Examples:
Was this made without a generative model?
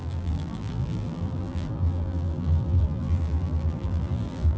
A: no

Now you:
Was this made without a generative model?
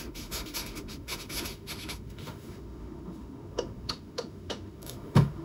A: no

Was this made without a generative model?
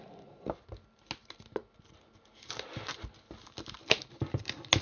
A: yes